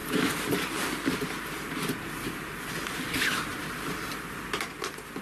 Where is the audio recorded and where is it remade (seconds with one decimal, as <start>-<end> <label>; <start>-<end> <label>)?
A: 0.0-3.1 remade; 3.1-3.5 recorded; 3.5-4.4 remade; 4.4-5.2 recorded